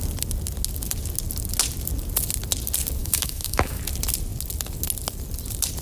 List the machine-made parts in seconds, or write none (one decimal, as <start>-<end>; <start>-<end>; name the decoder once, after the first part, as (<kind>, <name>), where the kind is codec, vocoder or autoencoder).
3.0-3.8 (autoencoder, DAC-VAE)